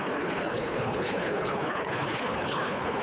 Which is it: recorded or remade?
remade